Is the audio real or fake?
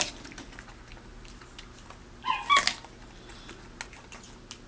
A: real